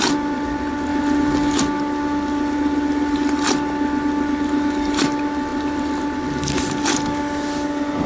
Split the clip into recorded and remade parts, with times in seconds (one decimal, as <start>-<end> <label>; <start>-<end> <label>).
0.0-8.1 recorded

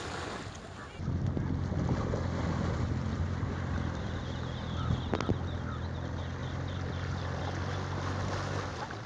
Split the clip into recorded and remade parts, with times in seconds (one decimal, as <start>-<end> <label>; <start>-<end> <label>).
0.0-9.1 recorded

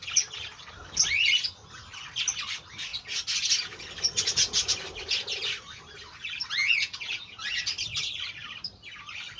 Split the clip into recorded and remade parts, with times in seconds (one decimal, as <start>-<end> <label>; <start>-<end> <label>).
0.0-6.6 recorded; 6.6-7.6 remade; 7.6-9.4 recorded

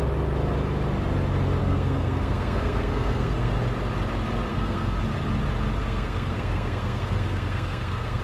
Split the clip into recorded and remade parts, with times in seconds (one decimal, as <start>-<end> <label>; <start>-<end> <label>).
0.0-1.6 recorded; 1.6-3.5 remade; 3.5-4.5 recorded; 4.5-5.0 remade; 5.0-5.8 recorded; 5.8-8.2 remade